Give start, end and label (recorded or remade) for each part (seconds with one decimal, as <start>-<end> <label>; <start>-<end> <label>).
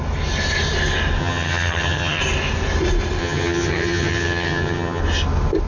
0.0-1.2 recorded; 1.2-2.2 remade; 2.2-3.2 recorded; 3.2-5.0 remade; 5.0-5.7 recorded